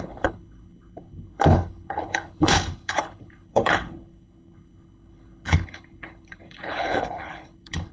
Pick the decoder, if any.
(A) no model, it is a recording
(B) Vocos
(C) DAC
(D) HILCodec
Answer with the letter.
D